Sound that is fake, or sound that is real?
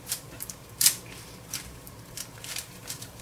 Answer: fake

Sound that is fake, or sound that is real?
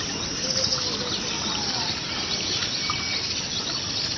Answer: real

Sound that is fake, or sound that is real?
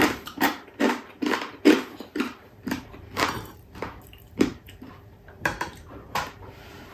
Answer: fake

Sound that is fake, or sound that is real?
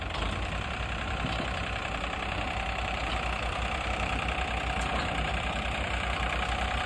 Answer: fake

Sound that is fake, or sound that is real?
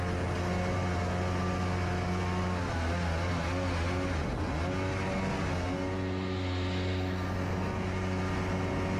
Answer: real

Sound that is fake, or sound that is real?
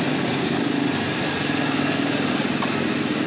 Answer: fake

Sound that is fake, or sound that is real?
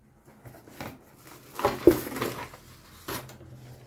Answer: real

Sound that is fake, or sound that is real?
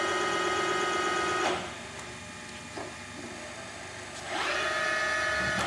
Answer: real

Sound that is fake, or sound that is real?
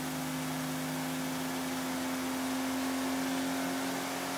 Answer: real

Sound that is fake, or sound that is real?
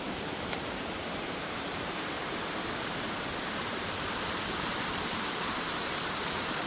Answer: fake